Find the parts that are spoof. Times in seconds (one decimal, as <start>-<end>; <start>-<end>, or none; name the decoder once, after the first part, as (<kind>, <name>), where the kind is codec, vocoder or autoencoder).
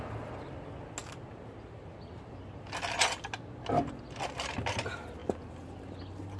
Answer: none